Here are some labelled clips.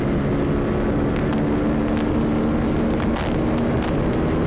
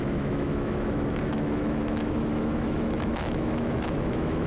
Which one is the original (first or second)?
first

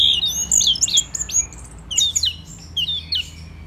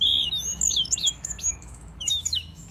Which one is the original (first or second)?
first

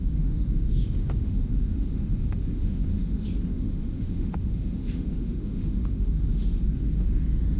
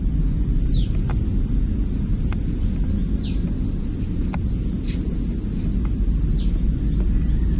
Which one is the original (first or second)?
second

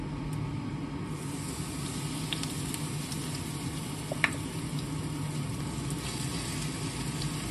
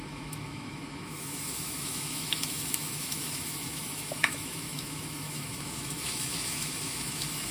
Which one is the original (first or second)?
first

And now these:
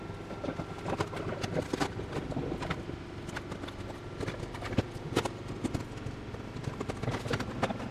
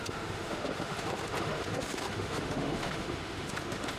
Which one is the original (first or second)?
first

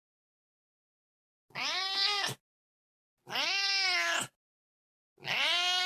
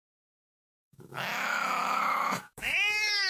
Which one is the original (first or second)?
first